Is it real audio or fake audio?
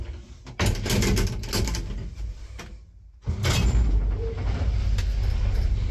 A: real